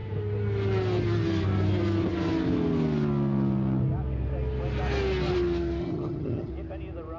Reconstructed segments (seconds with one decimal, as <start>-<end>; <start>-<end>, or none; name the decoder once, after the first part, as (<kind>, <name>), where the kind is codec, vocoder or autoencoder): 5.8-6.5 (vocoder, HiFi-GAN)